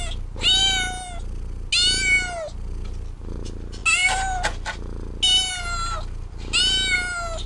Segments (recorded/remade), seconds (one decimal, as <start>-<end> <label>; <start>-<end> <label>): 0.0-7.5 recorded